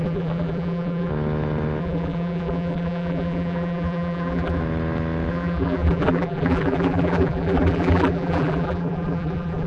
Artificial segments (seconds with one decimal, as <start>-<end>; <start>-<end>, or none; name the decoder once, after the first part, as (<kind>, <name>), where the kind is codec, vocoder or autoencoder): 0.0-1.1 (vocoder, BigVGAN v2); 1.8-4.6; 5.3-9.7